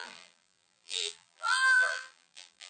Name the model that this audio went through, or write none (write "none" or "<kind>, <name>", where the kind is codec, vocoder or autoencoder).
vocoder, BigVGAN v2